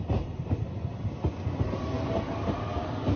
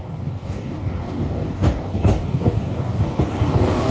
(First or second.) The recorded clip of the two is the first